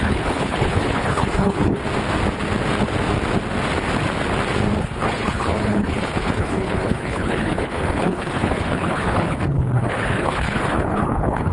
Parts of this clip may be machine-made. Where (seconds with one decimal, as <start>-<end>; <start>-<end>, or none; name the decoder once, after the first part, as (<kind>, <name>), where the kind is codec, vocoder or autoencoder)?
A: 0.0-1.8 (codec, HILCodec); 4.8-11.5